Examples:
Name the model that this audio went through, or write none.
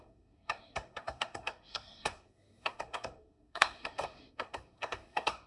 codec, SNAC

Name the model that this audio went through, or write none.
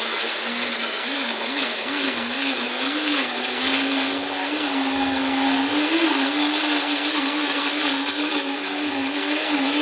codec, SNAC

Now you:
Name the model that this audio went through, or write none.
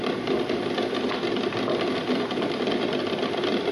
none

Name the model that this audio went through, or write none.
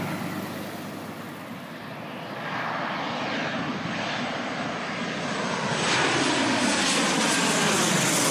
none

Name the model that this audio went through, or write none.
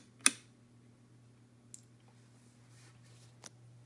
none